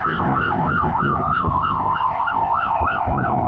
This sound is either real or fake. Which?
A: fake